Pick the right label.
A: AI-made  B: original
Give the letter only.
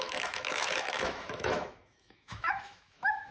A